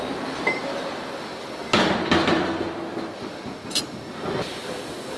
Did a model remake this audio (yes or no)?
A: no